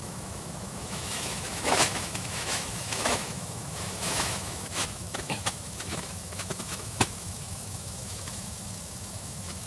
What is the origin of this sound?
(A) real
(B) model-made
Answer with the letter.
B